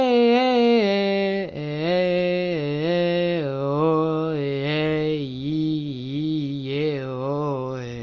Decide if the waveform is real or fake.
real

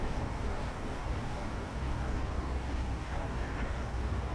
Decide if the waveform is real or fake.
fake